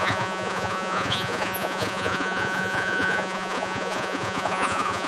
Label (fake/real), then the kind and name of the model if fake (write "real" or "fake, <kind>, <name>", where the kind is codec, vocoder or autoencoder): fake, vocoder, Vocos